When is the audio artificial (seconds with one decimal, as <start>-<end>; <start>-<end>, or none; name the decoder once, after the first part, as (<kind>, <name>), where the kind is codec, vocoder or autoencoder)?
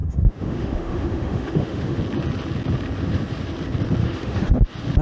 0.0-2.0 (autoencoder, DAC-VAE); 4.0-4.6